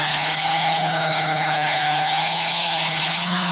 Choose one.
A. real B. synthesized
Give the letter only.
B